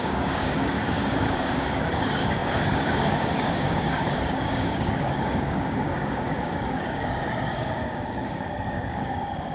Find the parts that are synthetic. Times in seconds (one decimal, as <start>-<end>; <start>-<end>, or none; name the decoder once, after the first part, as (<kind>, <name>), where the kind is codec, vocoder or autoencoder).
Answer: 0.0-9.5 (codec, DAC)